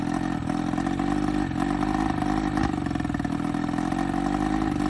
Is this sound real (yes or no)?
yes